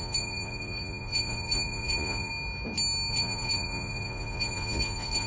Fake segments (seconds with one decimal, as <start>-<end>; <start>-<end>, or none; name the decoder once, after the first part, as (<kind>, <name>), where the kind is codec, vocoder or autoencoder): 0.0-2.3 (vocoder, Vocos); 3.1-5.3